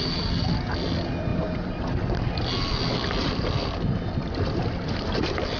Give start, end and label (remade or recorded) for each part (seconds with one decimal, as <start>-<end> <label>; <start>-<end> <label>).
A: 0.0-5.6 recorded